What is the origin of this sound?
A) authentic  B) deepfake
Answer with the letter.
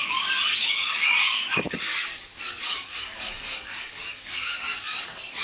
B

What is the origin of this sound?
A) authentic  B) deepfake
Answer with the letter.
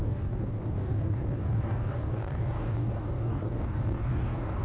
B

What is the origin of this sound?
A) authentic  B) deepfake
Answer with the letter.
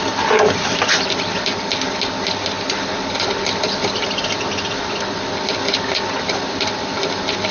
A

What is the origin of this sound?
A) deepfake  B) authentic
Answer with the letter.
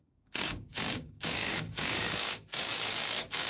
A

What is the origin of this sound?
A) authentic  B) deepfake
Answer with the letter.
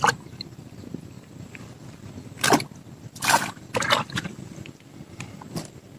A